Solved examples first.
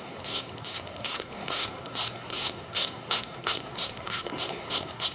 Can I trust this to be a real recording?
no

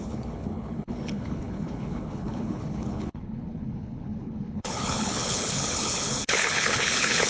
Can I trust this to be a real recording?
no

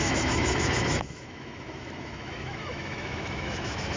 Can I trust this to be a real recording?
no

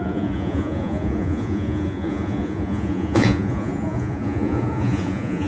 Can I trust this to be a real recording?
no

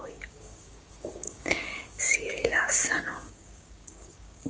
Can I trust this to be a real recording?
no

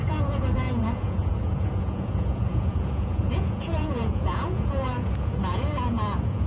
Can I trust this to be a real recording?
no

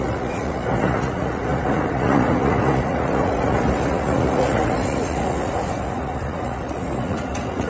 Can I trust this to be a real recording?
no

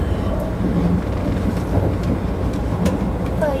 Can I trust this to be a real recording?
yes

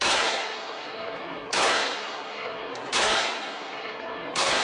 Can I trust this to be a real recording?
no